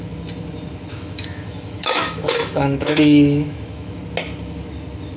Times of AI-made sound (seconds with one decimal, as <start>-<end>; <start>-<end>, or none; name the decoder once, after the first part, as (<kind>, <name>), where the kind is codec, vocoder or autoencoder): 0.9-4.0 (autoencoder, DAC-VAE)